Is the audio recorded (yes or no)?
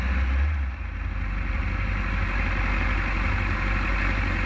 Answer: yes